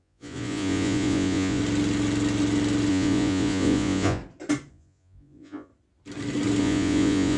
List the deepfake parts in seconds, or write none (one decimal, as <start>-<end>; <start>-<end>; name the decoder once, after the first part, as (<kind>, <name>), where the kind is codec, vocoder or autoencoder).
0.0-1.6 (vocoder, Vocos); 2.9-4.2; 4.7-5.7; 6.6-7.4